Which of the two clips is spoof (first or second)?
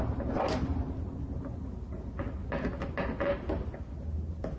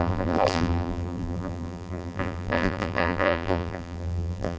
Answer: second